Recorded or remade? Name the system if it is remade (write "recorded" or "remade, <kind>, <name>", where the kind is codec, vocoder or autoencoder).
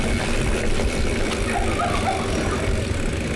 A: recorded